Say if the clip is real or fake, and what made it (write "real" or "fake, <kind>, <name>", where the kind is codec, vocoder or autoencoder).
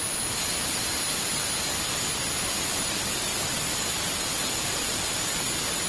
real